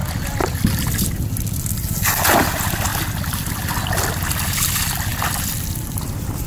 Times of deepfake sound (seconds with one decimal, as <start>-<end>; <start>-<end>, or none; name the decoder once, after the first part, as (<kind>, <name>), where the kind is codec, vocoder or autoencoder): none